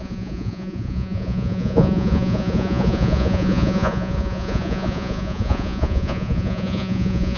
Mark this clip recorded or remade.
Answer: remade